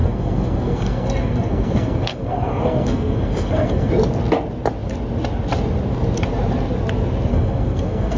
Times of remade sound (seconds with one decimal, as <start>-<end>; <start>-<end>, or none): 0.0-3.9; 7.3-8.2